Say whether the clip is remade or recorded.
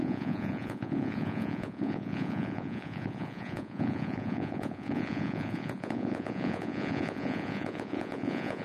remade